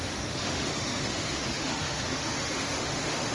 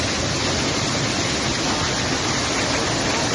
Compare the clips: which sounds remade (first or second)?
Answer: first